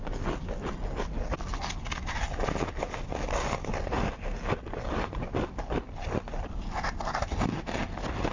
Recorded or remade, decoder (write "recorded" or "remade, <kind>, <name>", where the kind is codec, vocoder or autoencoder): recorded